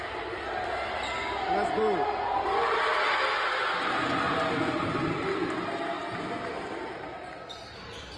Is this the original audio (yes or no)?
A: yes